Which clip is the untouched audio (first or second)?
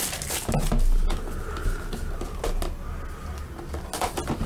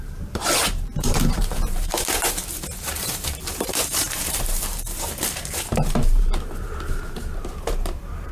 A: first